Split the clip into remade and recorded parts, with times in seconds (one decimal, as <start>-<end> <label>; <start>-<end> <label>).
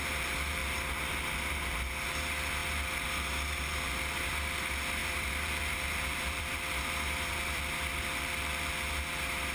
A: 0.0-5.0 recorded; 5.0-7.6 remade; 7.6-9.5 recorded